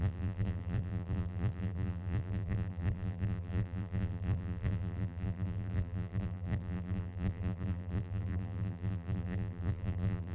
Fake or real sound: fake